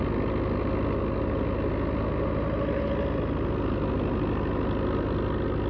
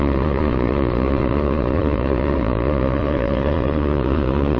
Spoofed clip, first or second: second